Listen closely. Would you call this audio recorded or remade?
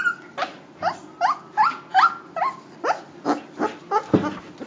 recorded